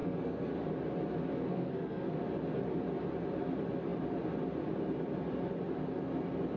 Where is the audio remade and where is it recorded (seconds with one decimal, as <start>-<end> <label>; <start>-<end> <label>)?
0.0-0.5 remade; 0.5-1.5 recorded; 1.5-2.2 remade; 2.2-6.6 recorded